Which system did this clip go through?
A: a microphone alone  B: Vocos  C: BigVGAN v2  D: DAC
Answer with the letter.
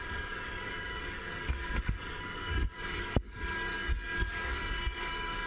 D